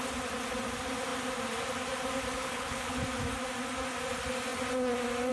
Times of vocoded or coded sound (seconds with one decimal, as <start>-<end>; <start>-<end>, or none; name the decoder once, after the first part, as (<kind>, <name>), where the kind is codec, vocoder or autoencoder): 2.4-3.0 (codec, HILCodec)